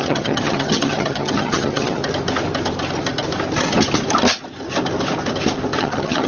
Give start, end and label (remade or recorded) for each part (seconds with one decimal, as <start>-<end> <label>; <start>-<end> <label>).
0.0-2.0 remade; 2.0-5.8 recorded; 5.8-6.3 remade

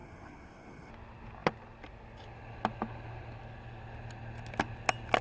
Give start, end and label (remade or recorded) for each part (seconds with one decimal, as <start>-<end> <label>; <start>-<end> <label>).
0.0-0.9 remade; 0.9-5.2 recorded

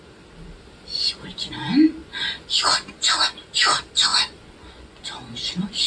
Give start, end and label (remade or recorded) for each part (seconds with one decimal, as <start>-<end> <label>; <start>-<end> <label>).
0.0-0.9 recorded; 0.9-1.6 remade; 1.6-2.0 recorded; 2.0-3.4 remade; 3.4-4.1 recorded; 4.1-5.9 remade

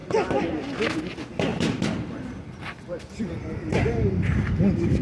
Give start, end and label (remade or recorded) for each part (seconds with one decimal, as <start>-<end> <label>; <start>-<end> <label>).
0.0-1.5 recorded; 1.5-3.3 remade; 3.3-5.0 recorded

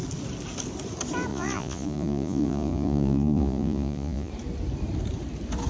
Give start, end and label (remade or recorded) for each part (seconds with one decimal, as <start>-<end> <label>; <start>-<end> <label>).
0.0-1.3 recorded; 1.3-4.3 remade; 4.3-5.7 recorded